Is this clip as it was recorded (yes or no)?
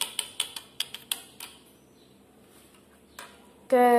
yes